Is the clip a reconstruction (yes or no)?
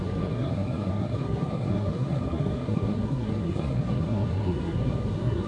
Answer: yes